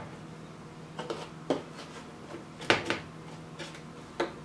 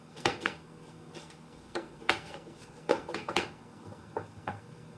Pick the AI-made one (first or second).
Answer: second